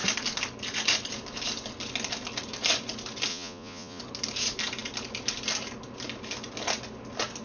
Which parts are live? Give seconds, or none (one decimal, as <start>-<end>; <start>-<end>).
0.0-3.3; 4.0-7.4